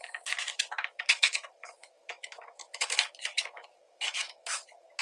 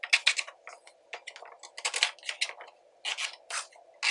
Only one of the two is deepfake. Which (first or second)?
first